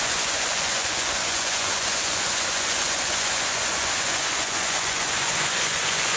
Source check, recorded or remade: remade